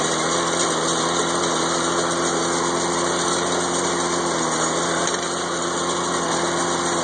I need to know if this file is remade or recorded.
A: recorded